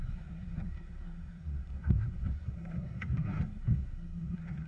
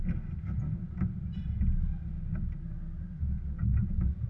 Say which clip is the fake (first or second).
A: first